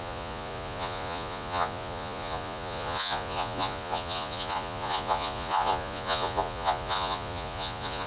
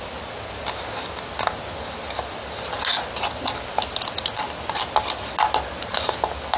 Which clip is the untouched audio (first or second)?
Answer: second